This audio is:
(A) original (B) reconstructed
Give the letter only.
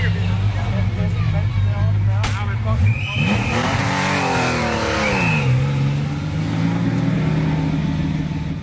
A